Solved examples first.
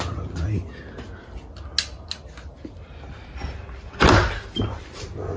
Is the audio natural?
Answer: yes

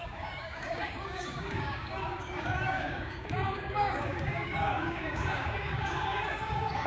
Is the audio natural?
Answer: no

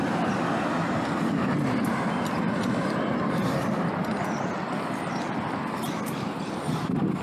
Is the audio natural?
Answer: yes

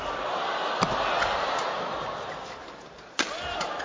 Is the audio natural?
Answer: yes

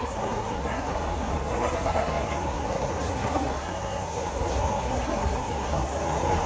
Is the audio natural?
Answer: no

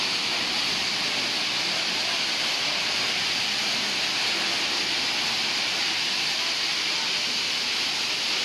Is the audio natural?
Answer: yes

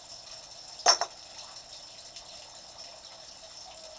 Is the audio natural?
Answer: yes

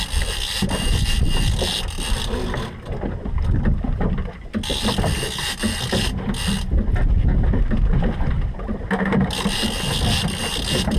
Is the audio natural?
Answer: yes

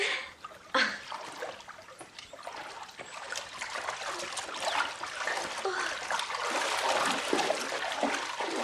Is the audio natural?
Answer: yes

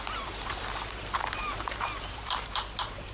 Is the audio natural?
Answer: no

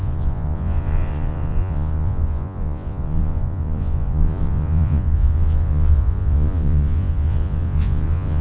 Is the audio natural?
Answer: no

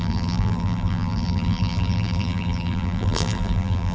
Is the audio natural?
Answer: no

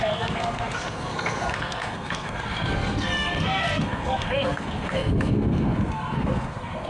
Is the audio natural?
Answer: no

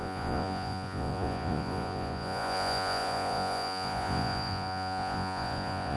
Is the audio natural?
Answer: no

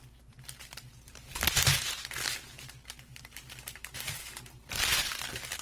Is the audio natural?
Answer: no